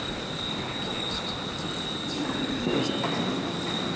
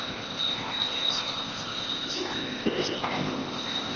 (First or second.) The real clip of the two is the first